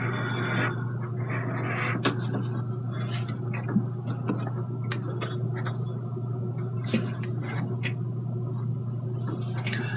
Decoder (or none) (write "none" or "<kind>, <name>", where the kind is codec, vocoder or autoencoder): none